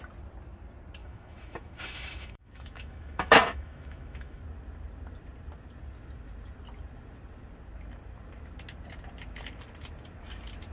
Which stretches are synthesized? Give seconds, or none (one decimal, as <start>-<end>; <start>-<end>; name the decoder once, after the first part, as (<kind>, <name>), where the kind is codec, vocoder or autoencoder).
1.0-4.4 (autoencoder, DAC-VAE)